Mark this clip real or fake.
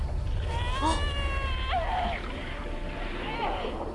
real